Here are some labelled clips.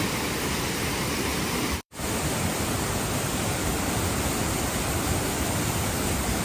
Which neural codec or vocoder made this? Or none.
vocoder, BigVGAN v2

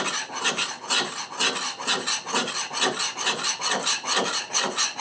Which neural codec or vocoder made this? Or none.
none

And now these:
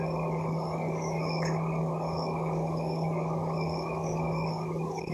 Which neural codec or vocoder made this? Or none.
codec, DAC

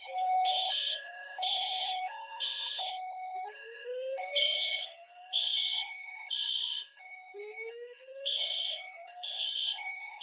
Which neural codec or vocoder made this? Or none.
codec, HILCodec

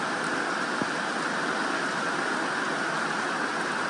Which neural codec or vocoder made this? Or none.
none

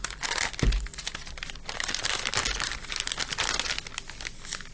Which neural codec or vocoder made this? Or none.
none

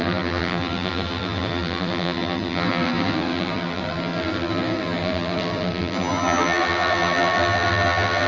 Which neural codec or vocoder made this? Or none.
vocoder, BigVGAN v2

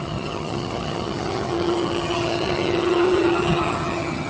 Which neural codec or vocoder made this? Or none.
vocoder, HiFi-GAN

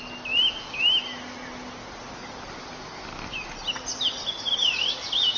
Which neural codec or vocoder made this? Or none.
none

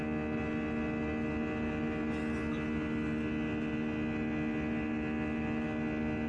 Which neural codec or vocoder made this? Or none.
none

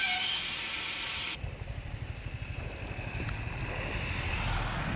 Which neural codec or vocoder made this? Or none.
none